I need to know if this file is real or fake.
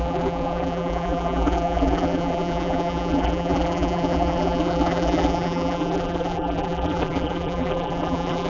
fake